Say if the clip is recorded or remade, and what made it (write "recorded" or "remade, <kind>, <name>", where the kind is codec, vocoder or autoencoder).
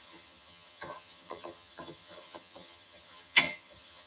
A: remade, vocoder, HiFi-GAN